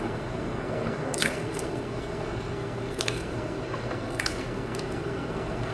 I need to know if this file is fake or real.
fake